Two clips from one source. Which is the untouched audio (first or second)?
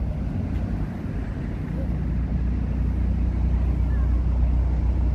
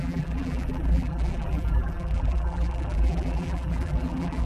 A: first